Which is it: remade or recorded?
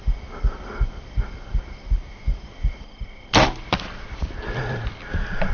recorded